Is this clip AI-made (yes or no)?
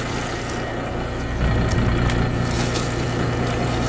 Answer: no